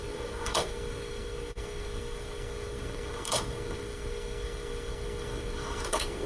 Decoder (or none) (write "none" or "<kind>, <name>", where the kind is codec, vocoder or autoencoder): codec, SNAC